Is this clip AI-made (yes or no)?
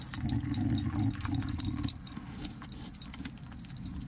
no